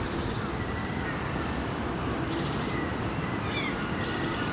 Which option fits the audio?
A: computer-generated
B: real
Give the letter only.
A